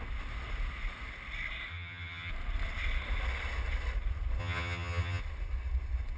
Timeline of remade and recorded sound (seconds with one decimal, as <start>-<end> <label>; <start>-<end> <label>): 0.0-1.7 recorded; 1.7-2.3 remade; 2.3-4.4 recorded; 4.4-5.2 remade; 5.2-6.2 recorded